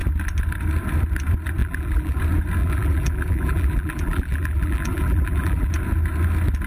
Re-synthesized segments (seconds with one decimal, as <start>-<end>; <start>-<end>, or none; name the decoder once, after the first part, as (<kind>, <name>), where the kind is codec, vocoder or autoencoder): 1.6-2.2 (vocoder, BigVGAN v2); 2.6-5.7